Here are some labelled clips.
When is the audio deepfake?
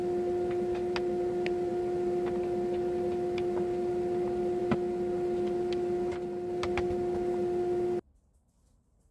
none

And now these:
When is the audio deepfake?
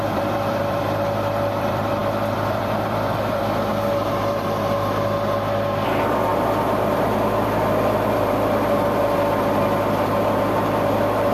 0.0-6.3 (vocoder, BigVGAN v2); 7.0-11.3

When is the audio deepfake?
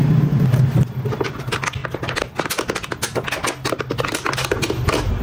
none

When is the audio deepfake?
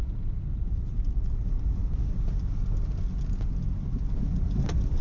0.0-1.8 (vocoder, BigVGAN v2)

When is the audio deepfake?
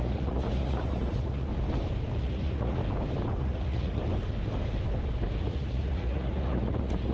0.0-1.5 (vocoder, Vocos); 2.2-2.8; 3.4-4.0; 5.4-7.1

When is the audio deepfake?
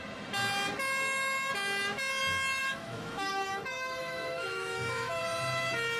2.6-5.2 (autoencoder, DAC-VAE)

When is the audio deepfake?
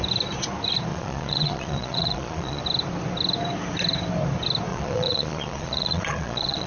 0.9-2.6 (vocoder, Vocos); 4.7-6.7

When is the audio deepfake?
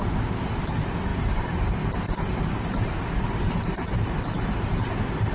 1.1-4.0 (vocoder, BigVGAN v2)